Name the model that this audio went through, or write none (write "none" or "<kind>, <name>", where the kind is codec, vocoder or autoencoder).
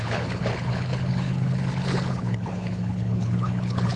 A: codec, HILCodec